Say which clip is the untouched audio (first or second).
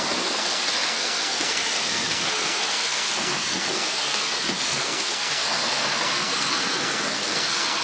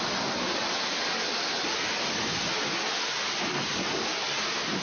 second